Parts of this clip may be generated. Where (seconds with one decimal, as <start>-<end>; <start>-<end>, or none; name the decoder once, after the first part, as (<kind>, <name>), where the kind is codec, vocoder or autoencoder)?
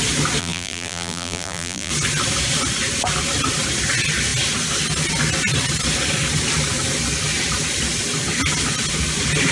0.4-1.9 (vocoder, BigVGAN v2)